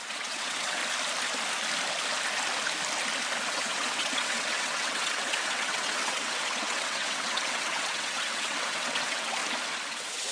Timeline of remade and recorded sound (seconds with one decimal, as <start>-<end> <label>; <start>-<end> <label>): 0.0-0.8 remade; 0.8-3.5 recorded; 3.5-9.4 remade; 9.4-9.9 recorded; 9.9-10.3 remade